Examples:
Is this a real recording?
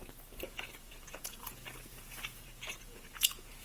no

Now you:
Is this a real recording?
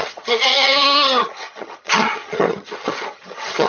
no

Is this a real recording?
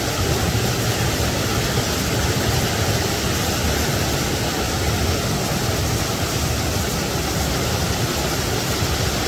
yes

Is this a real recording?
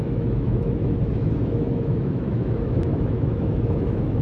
no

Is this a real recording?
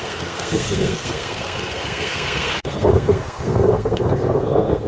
no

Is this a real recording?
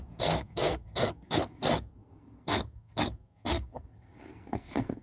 no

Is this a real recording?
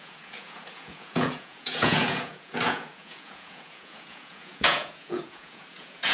no